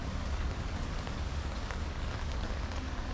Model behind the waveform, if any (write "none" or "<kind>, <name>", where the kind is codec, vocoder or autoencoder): codec, DAC